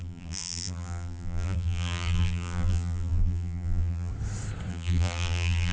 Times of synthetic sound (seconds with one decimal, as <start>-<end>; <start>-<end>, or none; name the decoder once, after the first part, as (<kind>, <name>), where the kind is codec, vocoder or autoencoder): 0.0-4.1 (vocoder, BigVGAN v2); 4.7-5.7